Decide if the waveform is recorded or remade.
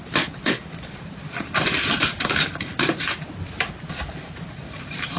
remade